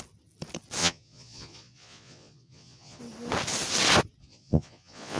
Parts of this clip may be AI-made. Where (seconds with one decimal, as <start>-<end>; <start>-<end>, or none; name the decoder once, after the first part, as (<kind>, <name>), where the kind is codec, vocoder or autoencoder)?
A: 0.8-3.0 (vocoder, Vocos); 4.2-5.2